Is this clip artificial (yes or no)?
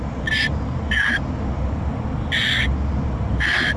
no